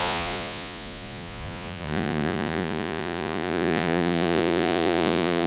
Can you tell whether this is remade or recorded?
remade